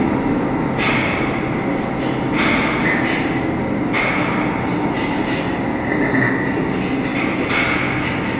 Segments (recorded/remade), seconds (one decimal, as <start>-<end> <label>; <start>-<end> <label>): 0.0-2.8 recorded; 2.8-3.4 remade; 3.4-8.4 recorded